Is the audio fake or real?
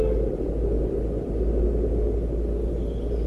real